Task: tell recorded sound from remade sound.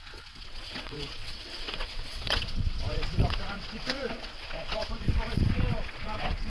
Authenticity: remade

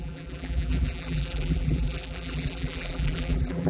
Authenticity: remade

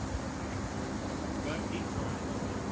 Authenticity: recorded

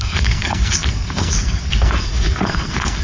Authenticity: remade